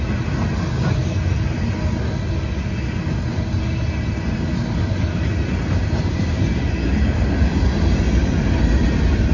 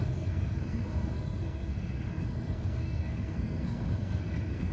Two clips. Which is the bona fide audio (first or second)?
first